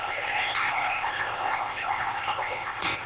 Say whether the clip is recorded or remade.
remade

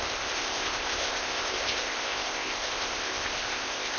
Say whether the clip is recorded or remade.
remade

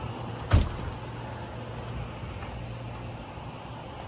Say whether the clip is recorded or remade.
recorded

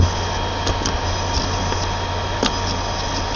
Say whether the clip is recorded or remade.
recorded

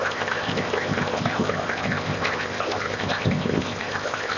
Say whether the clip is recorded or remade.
remade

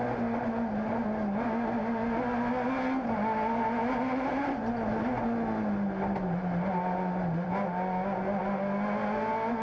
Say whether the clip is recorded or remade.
recorded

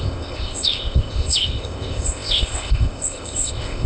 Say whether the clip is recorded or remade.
remade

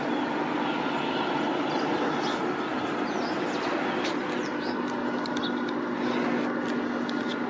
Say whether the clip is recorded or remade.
recorded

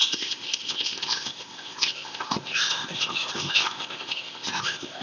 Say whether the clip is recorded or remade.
remade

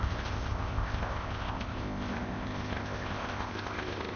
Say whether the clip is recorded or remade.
remade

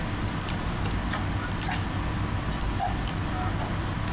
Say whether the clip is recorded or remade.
recorded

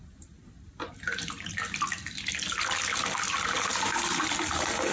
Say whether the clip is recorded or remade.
recorded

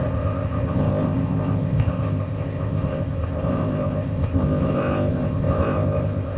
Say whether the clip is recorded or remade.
remade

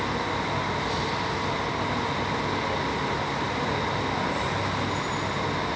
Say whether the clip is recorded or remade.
recorded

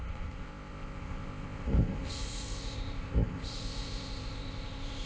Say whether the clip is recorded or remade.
remade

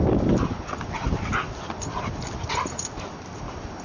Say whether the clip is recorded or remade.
recorded